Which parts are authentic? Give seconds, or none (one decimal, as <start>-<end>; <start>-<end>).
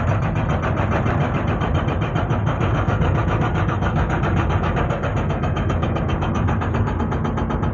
0.0-2.4; 7.0-7.7